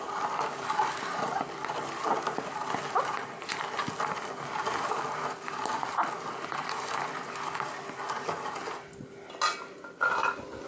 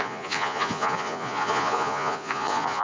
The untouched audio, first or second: first